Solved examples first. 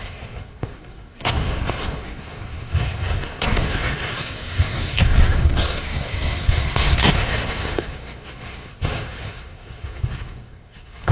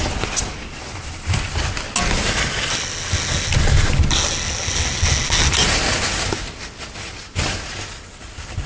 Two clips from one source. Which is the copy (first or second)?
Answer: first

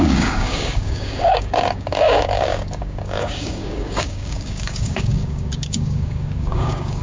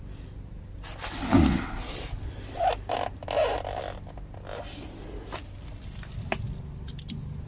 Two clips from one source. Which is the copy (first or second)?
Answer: first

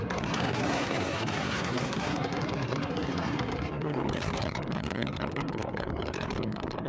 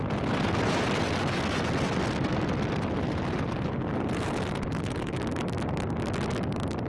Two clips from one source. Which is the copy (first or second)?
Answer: first